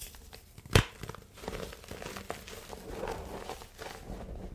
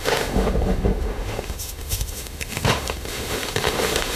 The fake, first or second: second